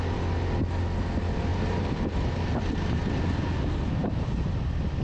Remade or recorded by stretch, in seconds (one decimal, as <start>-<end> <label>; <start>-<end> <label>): 0.0-1.5 recorded; 1.5-2.6 remade; 2.6-4.0 recorded; 4.0-4.5 remade; 4.5-5.0 recorded